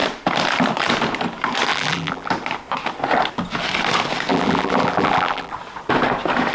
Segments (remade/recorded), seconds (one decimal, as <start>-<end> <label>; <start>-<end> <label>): 0.0-1.7 recorded; 1.7-2.3 remade; 2.3-4.3 recorded; 4.3-5.5 remade; 5.5-6.5 recorded